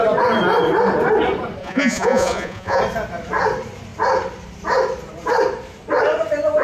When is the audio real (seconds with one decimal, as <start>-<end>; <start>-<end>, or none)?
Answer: 0.0-1.6; 2.8-6.6